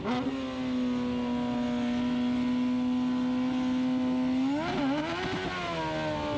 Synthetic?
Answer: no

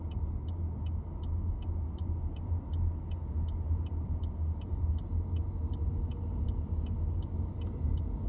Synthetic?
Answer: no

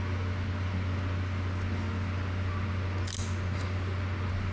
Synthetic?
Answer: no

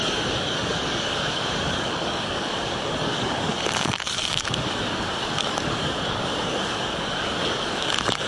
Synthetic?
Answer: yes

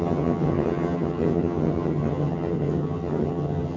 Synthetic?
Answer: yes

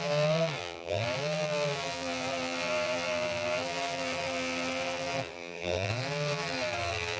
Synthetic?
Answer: yes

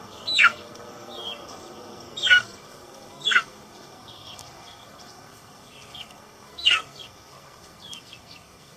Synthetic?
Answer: yes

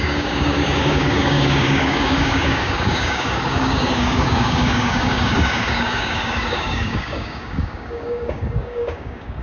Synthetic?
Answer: yes